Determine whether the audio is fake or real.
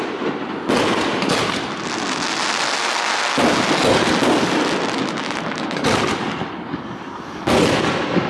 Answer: real